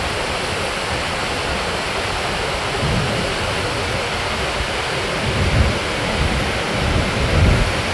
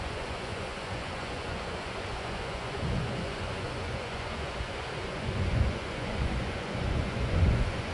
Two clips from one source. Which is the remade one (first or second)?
second